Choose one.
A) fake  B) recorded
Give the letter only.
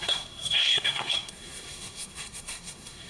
A